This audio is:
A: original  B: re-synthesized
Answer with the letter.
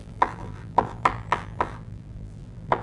B